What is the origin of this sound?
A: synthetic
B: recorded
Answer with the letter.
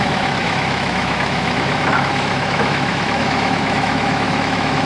A